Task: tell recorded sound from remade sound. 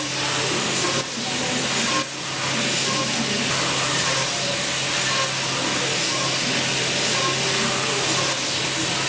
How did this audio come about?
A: recorded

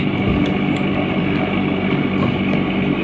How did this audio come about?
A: recorded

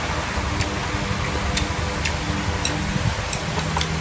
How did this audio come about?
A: recorded